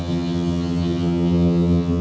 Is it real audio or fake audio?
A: fake